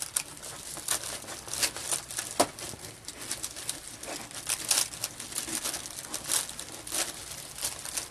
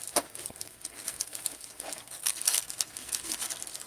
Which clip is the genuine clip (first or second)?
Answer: first